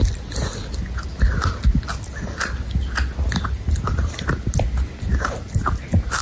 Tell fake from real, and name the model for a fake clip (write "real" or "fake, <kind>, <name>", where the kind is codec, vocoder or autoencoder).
real